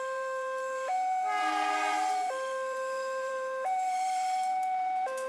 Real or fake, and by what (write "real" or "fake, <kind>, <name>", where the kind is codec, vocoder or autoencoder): fake, vocoder, BigVGAN v2